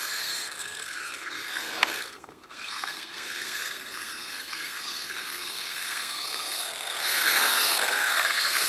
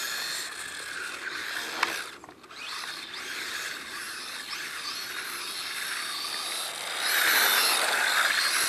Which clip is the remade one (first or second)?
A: first